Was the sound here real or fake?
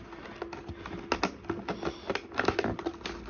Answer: real